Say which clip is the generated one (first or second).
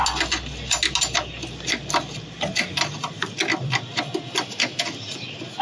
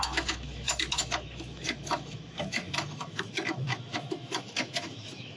second